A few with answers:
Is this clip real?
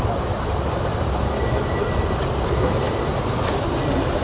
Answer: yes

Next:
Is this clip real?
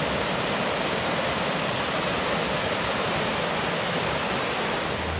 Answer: yes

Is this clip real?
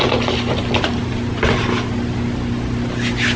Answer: yes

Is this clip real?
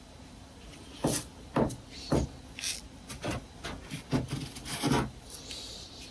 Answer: yes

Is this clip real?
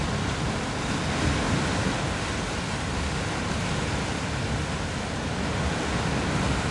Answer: yes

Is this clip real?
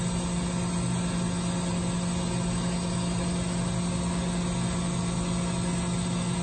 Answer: yes